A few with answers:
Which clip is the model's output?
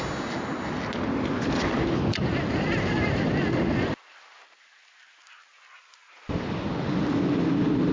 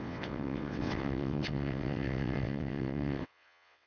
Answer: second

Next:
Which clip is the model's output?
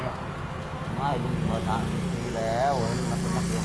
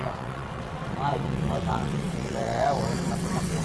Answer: second